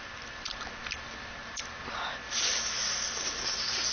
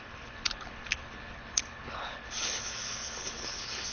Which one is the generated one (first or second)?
second